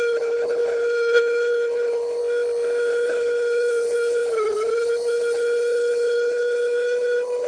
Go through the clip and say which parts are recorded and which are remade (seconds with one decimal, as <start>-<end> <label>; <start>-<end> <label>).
0.0-2.2 remade; 2.2-2.9 recorded; 2.9-7.5 remade